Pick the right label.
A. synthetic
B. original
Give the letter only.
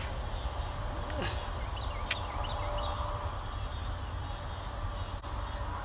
B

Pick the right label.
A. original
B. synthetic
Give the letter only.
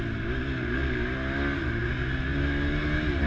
A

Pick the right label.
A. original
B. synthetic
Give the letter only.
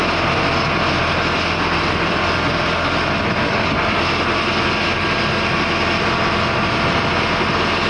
A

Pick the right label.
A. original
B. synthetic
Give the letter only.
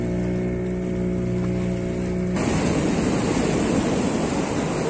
A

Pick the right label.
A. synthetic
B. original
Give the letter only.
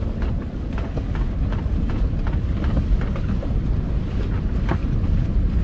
B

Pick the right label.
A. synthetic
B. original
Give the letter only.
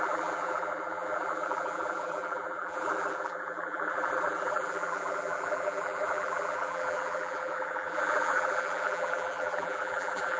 A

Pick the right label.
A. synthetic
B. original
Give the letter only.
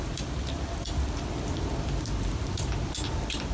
A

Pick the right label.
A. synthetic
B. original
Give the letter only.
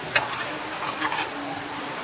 B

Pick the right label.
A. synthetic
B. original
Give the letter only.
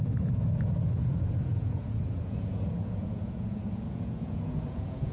A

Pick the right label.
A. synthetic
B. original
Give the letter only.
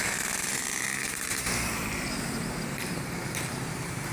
A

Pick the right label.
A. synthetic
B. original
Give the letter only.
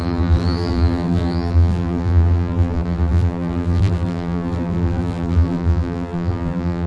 A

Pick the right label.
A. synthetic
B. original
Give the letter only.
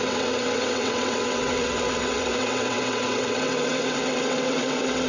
A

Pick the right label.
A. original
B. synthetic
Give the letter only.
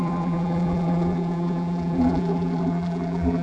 B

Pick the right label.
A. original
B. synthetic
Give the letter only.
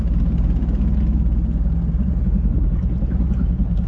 A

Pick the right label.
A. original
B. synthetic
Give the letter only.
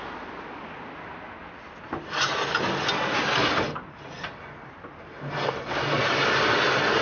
A